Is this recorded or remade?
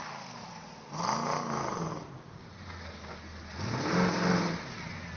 recorded